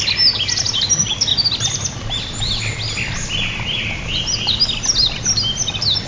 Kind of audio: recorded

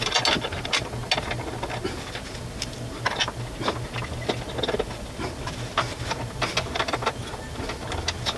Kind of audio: recorded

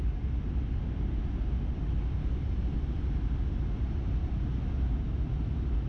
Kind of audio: recorded